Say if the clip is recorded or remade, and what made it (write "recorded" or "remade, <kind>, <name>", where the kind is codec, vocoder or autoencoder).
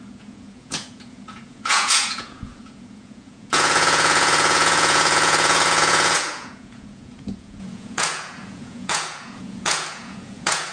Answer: remade, vocoder, Vocos